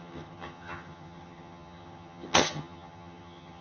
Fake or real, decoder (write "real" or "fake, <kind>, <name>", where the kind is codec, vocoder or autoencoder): fake, vocoder, HiFi-GAN